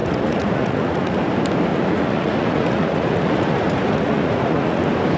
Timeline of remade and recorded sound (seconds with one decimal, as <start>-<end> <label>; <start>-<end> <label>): 0.0-1.2 remade; 1.2-1.7 recorded; 1.7-4.8 remade; 4.8-5.2 recorded